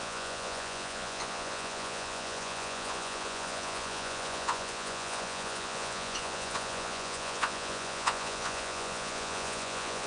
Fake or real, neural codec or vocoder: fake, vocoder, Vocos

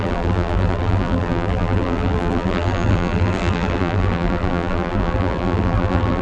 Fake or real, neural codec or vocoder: fake, vocoder, BigVGAN v2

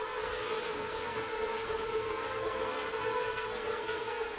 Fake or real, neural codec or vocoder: fake, codec, SNAC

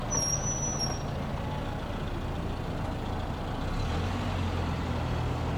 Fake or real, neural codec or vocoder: real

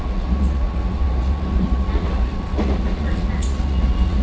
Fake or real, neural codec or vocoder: fake, vocoder, Vocos